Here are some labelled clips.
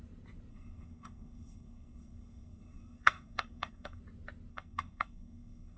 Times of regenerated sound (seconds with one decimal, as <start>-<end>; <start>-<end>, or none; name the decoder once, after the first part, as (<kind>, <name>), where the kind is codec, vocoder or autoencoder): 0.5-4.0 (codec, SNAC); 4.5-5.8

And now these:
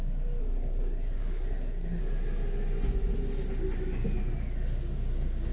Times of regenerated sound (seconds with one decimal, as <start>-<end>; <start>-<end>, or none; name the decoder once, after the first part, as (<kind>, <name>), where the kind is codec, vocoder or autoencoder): 0.4-2.0 (codec, SNAC)

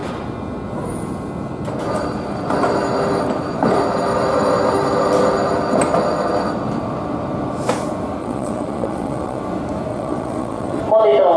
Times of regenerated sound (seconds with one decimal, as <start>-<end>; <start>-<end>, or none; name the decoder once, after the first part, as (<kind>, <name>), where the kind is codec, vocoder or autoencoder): 8.2-9.4 (vocoder, Vocos); 9.9-10.8

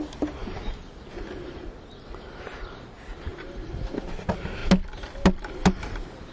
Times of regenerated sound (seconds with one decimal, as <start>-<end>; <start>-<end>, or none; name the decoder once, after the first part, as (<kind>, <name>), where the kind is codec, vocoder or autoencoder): none